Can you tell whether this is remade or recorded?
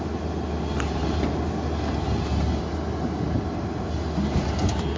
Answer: recorded